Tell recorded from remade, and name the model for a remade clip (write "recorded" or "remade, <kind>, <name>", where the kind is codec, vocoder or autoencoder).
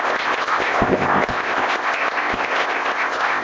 remade, codec, ZipCodec